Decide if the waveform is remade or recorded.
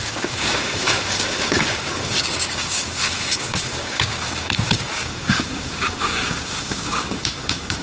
remade